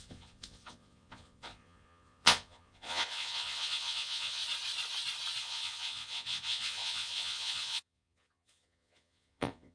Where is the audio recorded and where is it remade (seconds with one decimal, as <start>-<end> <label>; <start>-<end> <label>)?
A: 0.0-4.4 remade; 4.4-5.4 recorded; 5.4-9.7 remade